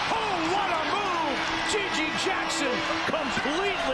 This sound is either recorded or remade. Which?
recorded